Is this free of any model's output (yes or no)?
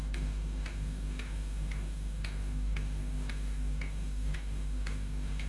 no